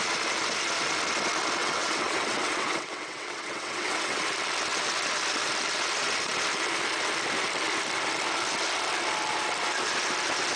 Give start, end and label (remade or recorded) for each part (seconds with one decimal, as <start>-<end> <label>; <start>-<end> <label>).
0.0-1.6 recorded; 1.6-4.2 remade; 4.2-10.6 recorded